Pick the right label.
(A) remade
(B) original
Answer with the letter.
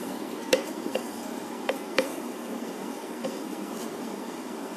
A